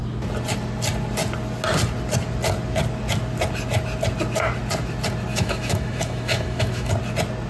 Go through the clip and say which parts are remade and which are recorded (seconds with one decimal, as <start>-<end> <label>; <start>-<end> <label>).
0.0-5.3 recorded; 5.3-6.9 remade; 6.9-7.5 recorded

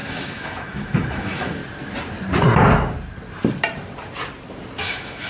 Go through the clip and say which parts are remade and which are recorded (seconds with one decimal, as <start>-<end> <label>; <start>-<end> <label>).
0.0-1.6 remade; 1.6-4.8 recorded; 4.8-5.3 remade

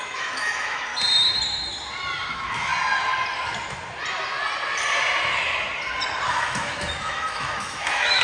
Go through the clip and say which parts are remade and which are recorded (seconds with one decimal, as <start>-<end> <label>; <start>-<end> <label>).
0.0-0.9 remade; 0.9-2.3 recorded; 2.3-2.7 remade; 2.7-6.3 recorded; 6.3-8.2 remade

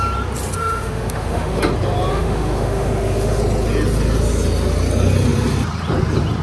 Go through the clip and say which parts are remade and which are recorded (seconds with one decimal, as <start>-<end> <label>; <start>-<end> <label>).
0.0-0.6 recorded; 0.6-1.6 remade; 1.6-2.1 recorded; 2.1-3.4 remade; 3.4-6.4 recorded

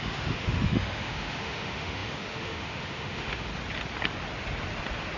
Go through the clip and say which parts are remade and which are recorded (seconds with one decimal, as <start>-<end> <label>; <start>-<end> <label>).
0.0-3.5 remade; 3.5-5.2 recorded

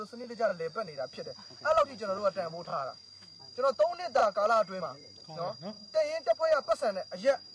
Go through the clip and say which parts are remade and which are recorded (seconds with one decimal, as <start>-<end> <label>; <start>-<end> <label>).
0.0-2.7 recorded; 2.7-3.4 remade; 3.4-7.5 recorded

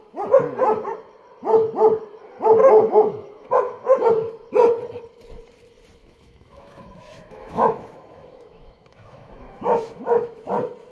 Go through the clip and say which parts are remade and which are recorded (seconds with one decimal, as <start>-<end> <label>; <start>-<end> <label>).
0.0-2.6 recorded; 2.6-4.1 remade; 4.1-6.0 recorded; 6.0-10.4 remade; 10.4-10.9 recorded

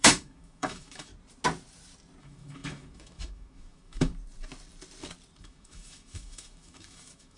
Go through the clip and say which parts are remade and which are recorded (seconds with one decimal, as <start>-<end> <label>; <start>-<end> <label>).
0.0-1.1 remade; 1.1-2.2 recorded; 2.2-4.1 remade; 4.1-5.4 recorded; 5.4-7.4 remade